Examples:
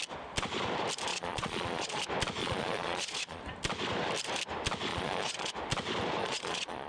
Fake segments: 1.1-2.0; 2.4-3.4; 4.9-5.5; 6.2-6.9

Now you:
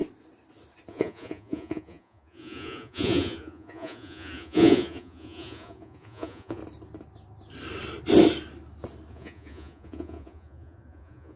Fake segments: 0.9-6.6; 9.1-11.4